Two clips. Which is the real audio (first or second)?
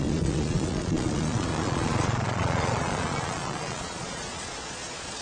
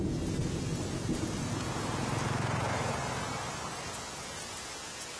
second